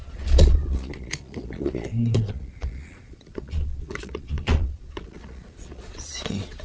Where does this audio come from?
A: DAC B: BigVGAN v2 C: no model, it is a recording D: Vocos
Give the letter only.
D